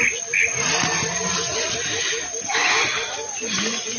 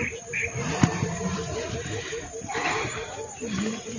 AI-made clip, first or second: second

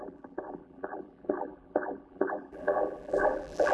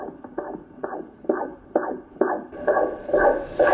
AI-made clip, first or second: first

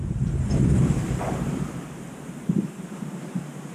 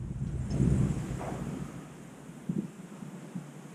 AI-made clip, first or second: first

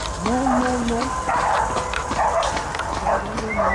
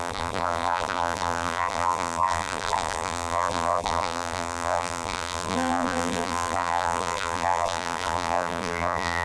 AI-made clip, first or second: second